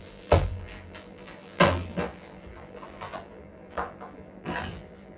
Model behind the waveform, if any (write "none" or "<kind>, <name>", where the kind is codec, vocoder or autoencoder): vocoder, BigVGAN v2